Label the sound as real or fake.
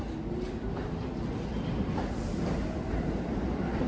real